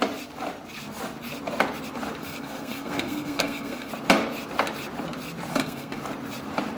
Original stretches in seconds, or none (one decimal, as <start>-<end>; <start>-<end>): 0.0-2.2; 3.9-5.5; 6.0-6.8